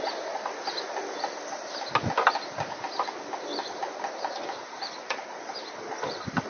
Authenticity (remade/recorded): recorded